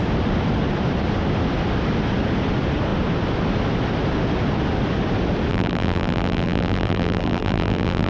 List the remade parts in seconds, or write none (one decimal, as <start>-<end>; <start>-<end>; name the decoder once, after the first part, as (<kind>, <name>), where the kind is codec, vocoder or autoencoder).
5.5-8.1 (vocoder, BigVGAN v2)